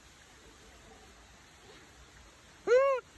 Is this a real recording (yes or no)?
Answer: yes